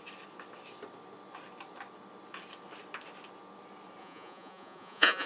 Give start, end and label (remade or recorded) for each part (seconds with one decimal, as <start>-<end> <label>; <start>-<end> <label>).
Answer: 0.0-4.0 recorded; 4.0-5.3 remade